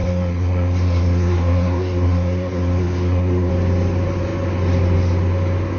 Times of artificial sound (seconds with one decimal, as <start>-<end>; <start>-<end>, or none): 0.0-3.5